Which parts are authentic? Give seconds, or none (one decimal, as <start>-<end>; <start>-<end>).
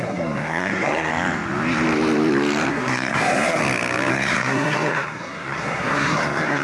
1.1-2.7; 3.6-4.1